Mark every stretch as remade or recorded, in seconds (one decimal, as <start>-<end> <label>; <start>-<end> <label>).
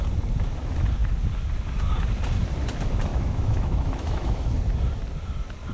0.0-3.1 recorded; 3.1-4.5 remade; 4.5-5.7 recorded